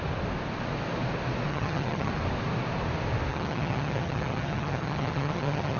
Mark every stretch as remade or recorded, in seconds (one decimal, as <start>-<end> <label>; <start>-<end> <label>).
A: 0.0-1.5 recorded; 1.5-2.1 remade; 2.1-3.3 recorded; 3.3-5.8 remade